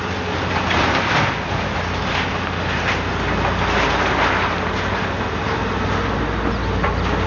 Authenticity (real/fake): real